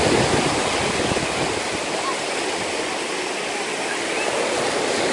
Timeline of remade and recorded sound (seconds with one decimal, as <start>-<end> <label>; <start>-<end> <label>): 0.0-5.1 recorded